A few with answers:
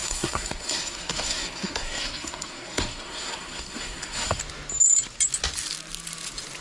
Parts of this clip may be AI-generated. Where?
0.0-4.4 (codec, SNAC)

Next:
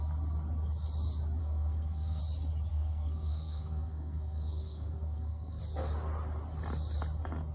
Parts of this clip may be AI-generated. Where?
1.4-2.2 (codec, SNAC); 2.7-5.6

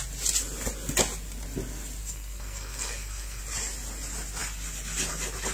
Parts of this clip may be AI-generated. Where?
2.0-3.4 (codec, SNAC)

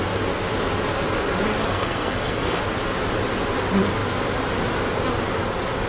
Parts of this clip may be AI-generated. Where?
1.6-2.6 (codec, SNAC)

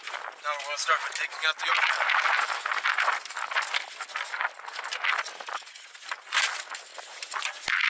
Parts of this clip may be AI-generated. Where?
none

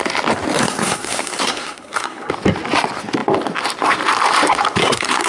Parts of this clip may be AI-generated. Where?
0.6-2.3 (codec, SNAC); 4.8-5.3

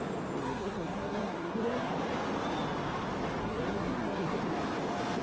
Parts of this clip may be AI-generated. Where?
0.4-1.9 (codec, SNAC); 3.4-4.4